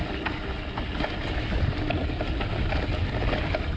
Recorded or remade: recorded